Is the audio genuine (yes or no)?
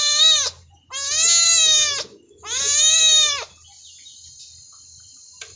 yes